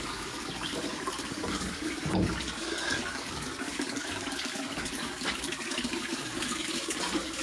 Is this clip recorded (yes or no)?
no